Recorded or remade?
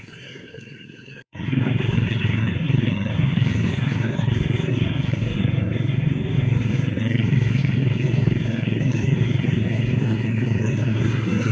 remade